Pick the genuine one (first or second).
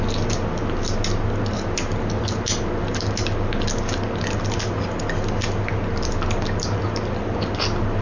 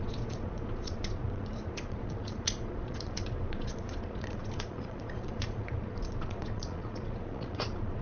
first